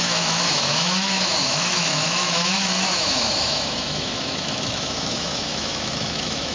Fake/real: fake